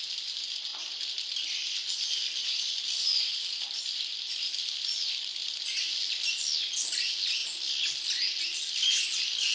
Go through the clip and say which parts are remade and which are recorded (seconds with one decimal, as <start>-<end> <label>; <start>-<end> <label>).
0.0-9.5 recorded